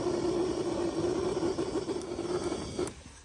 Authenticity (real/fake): real